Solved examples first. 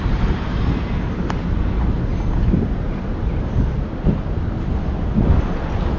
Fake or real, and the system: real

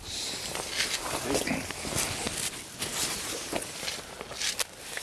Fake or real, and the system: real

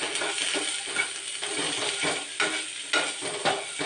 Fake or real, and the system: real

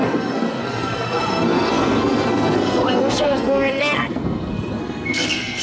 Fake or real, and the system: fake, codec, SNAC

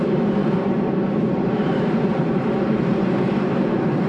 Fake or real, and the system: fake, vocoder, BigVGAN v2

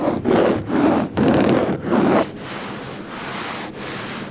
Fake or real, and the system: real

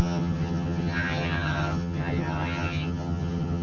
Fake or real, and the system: fake, vocoder, HiFi-GAN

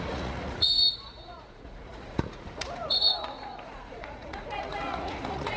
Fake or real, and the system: fake, vocoder, Vocos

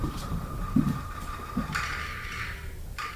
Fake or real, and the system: fake, vocoder, BigVGAN v2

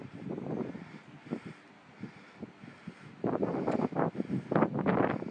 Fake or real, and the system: real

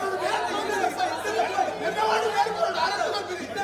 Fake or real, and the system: real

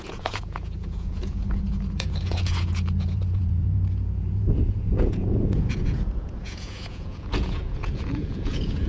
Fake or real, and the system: fake, vocoder, Vocos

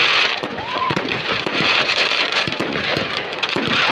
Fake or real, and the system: fake, vocoder, Vocos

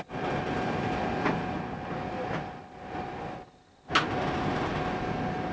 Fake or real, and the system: real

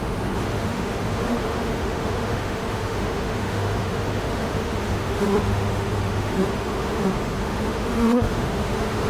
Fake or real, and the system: fake, autoencoder, DAC-VAE